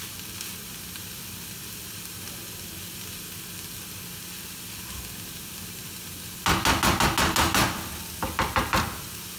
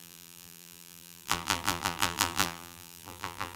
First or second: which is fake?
second